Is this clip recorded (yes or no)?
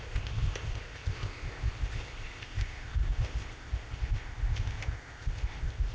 no